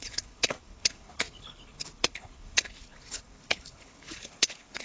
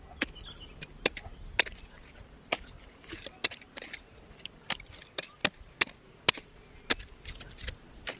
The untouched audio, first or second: second